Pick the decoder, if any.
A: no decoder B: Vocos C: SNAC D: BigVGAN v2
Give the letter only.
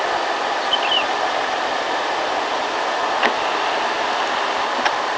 A